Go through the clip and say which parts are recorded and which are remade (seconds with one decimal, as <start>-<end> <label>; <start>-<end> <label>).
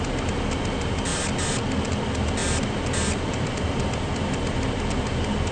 0.0-5.5 recorded